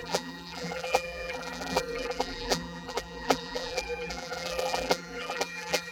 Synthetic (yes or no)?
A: yes